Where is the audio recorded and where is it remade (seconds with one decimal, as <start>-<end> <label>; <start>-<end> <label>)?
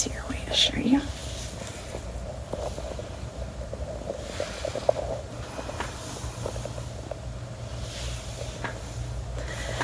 0.0-9.8 recorded